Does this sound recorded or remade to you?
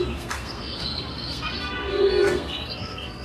remade